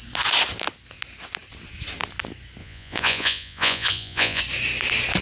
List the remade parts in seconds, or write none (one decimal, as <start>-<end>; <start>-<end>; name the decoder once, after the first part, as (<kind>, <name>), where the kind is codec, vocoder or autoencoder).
2.6-4.4 (vocoder, Vocos)